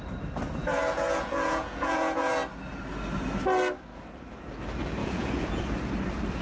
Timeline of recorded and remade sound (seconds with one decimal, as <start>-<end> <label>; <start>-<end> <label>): 0.0-0.6 recorded; 0.6-2.3 remade; 2.3-5.0 recorded; 5.0-5.6 remade; 5.6-6.4 recorded